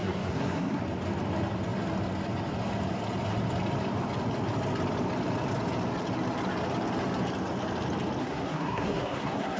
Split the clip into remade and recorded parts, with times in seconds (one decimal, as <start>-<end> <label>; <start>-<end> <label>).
0.0-0.8 remade; 0.8-8.2 recorded; 8.2-9.6 remade